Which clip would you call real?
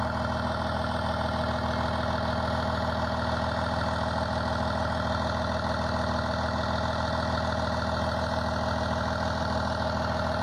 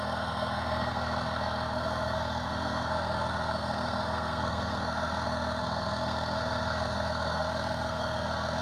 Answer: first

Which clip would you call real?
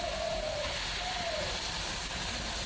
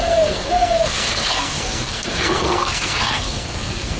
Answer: first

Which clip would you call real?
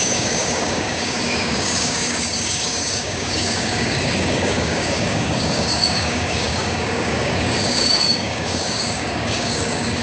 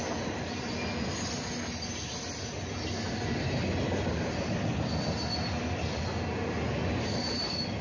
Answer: second